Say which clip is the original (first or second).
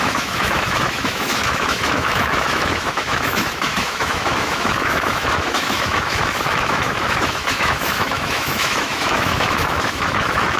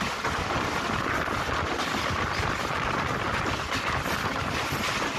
second